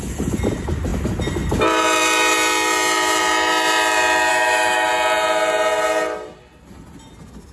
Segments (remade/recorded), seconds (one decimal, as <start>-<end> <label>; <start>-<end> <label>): 0.0-4.3 recorded; 4.3-4.9 remade; 4.9-7.5 recorded